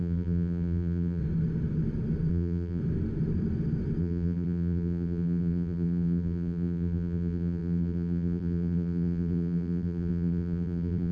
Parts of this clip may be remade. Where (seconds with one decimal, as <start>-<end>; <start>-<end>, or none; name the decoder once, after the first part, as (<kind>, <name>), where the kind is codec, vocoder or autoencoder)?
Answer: 0.0-1.2 (vocoder, BigVGAN v2); 2.3-2.8; 4.0-11.1